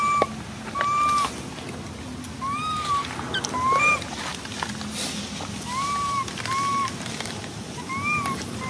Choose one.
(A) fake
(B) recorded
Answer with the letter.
B